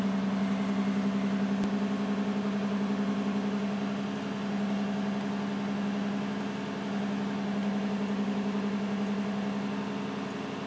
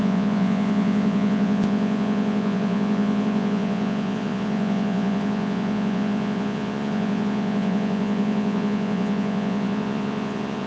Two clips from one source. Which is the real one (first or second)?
first